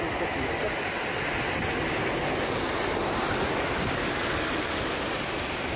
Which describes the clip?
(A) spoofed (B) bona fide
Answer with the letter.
B